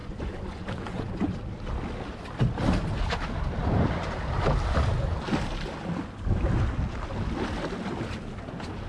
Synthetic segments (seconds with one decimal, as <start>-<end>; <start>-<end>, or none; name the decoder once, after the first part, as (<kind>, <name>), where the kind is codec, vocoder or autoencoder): 0.0-1.3 (vocoder, Vocos)